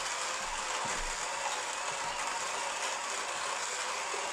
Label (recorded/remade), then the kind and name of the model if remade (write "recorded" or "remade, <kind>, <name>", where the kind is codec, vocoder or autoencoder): recorded